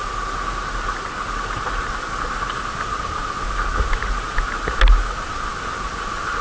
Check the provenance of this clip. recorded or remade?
recorded